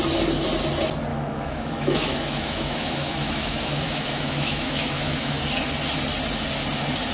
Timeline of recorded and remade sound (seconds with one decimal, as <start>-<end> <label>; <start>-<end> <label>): 0.0-1.1 recorded; 1.1-5.4 remade; 5.4-7.1 recorded